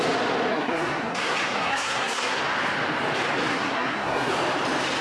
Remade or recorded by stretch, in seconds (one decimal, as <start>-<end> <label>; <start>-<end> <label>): 0.0-0.5 recorded; 0.5-2.4 remade; 2.4-3.5 recorded; 3.5-4.3 remade; 4.3-5.0 recorded